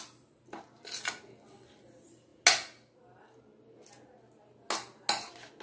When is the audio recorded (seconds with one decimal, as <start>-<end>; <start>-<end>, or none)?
0.0-5.6

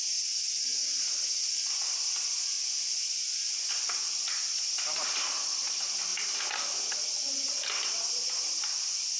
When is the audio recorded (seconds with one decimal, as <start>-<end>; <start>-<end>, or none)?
0.0-9.2

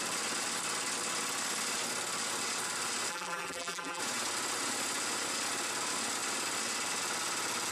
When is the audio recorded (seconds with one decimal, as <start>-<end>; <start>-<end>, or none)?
0.0-3.1; 4.0-7.7